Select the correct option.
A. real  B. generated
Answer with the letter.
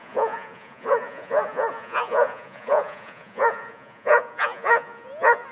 B